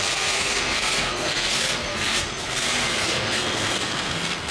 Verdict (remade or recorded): remade